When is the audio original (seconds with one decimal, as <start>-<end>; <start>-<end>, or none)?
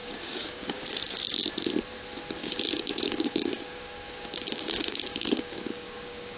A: 0.8-2.4